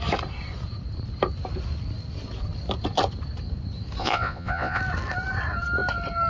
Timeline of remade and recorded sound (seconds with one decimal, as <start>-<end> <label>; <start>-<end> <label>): 0.0-4.0 recorded; 4.0-4.8 remade; 4.8-6.3 recorded